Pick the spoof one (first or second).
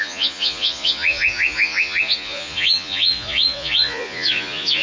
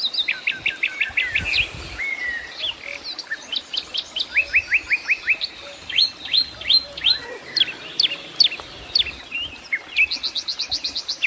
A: first